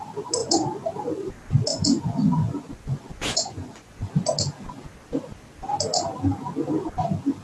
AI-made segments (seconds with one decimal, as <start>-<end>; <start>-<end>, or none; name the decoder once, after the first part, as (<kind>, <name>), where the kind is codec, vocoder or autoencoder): 0.4-0.9 (vocoder, Vocos); 1.7-4.1

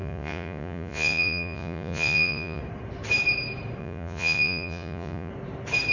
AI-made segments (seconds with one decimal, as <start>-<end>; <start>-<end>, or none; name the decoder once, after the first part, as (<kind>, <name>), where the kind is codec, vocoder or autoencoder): 0.0-2.6 (vocoder, Vocos); 3.8-5.3